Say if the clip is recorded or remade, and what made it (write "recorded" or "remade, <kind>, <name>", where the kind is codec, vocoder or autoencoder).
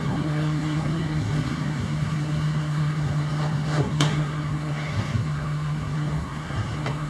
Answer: remade, codec, SNAC